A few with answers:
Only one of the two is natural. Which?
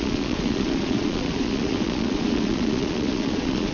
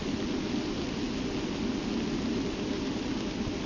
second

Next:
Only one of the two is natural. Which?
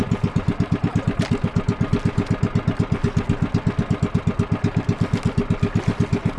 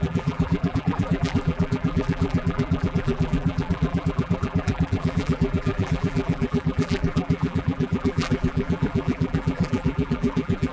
first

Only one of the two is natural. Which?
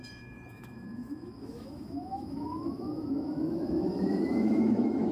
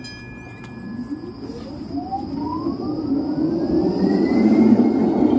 second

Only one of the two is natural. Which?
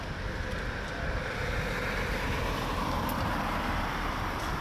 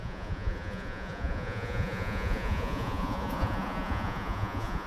first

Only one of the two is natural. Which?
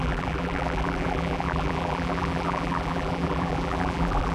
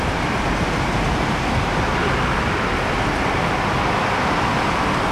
second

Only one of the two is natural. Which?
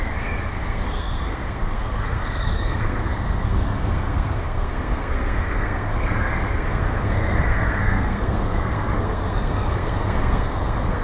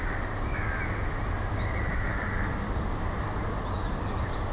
second